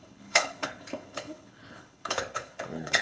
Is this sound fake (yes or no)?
yes